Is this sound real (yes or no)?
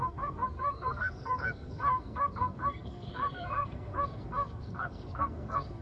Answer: no